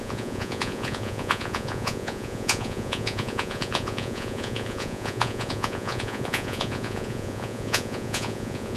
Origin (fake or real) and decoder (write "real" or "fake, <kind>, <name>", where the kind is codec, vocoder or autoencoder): fake, vocoder, Vocos